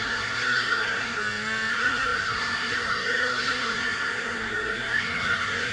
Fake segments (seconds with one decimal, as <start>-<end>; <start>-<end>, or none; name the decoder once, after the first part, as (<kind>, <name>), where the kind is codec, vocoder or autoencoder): 0.0-1.2 (codec, SNAC); 1.7-5.7